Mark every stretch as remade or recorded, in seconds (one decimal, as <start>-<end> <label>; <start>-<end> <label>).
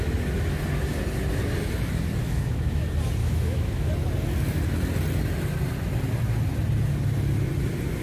0.0-2.2 recorded; 2.2-2.8 remade; 2.8-3.2 recorded; 3.2-3.9 remade; 3.9-8.0 recorded